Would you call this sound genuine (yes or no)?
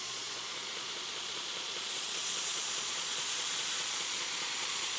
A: no